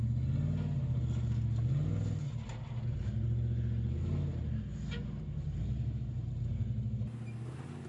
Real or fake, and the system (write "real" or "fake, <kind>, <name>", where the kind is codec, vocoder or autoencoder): real